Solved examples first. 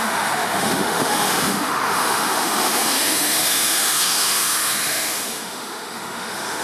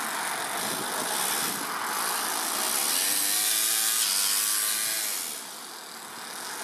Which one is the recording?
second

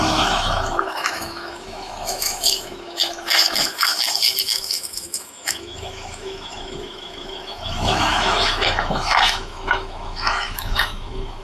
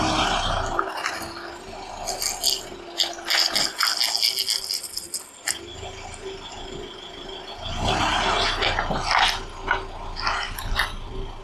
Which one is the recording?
second